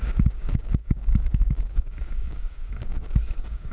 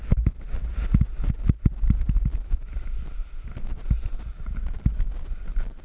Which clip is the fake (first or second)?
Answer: first